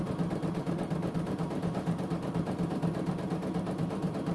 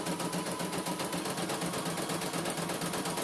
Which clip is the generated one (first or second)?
first